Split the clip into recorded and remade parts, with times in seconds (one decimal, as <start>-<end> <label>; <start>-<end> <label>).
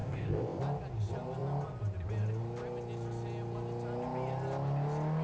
0.0-0.6 remade; 0.6-5.2 recorded